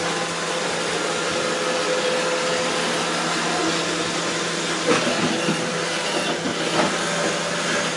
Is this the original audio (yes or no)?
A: yes